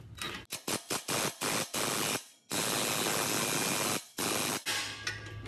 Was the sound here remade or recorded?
recorded